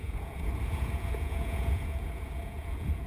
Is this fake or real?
fake